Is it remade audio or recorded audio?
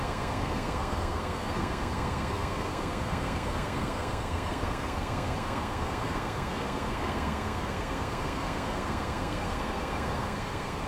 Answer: remade